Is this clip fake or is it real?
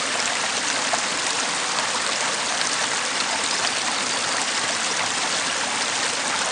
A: real